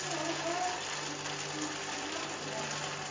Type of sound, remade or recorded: recorded